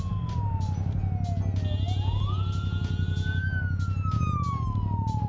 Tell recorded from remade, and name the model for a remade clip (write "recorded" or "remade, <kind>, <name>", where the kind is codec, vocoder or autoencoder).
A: recorded